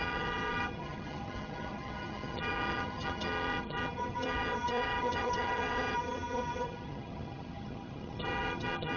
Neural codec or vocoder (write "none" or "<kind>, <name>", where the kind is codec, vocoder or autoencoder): vocoder, HiFi-GAN